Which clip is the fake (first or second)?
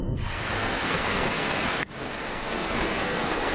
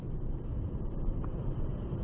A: first